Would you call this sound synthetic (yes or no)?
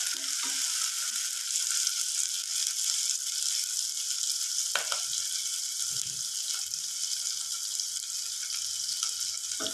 no